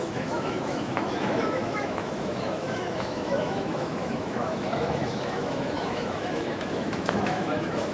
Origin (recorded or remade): remade